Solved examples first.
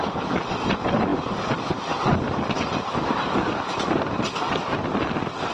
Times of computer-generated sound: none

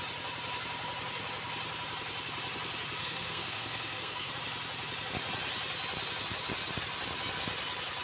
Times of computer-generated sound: 3.0-4.3 (codec, SNAC)

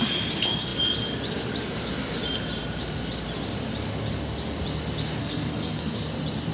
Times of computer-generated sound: 5.2-6.0 (codec, SNAC)

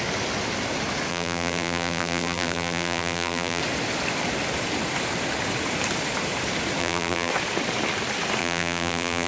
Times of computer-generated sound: 1.1-3.6 (vocoder, BigVGAN v2); 6.8-7.3; 8.4-9.3

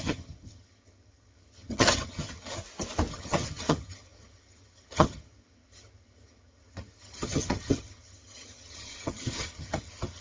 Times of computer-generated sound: 0.0-2.6 (vocoder, HiFi-GAN); 3.1-10.2

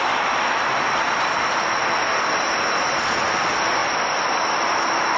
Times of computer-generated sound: none

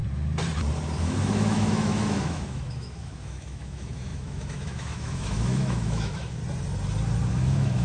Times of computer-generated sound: 1.0-6.4 (autoencoder, DAC-VAE); 7.3-7.8

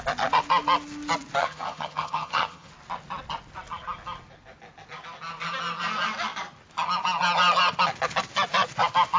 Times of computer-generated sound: 1.4-2.7 (vocoder, HiFi-GAN)